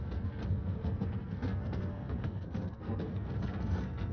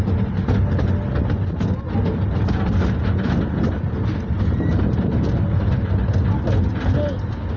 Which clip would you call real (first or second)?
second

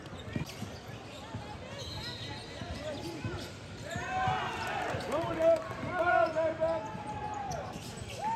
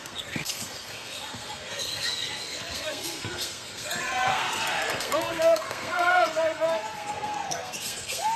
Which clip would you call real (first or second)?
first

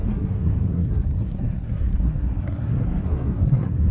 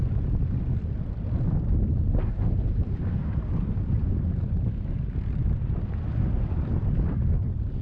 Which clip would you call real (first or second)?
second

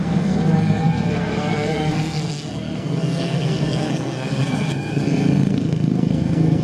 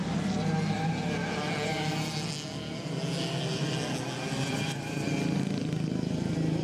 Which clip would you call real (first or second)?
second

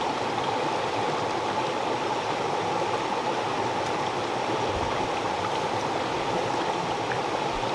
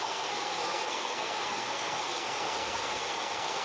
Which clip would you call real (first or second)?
first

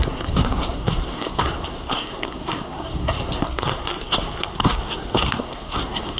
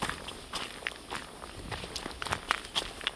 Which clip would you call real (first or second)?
second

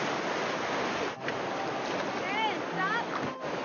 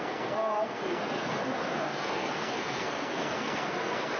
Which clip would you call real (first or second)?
first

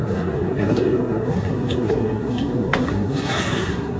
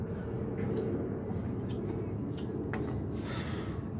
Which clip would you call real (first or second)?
second